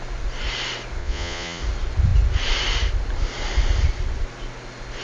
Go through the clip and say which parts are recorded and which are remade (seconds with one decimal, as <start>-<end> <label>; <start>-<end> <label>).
0.0-1.0 recorded; 1.0-1.6 remade; 1.6-5.0 recorded